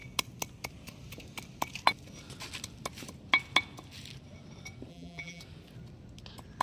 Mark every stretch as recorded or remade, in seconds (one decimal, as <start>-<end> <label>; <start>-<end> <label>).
0.0-4.9 recorded; 4.9-5.4 remade; 5.4-6.6 recorded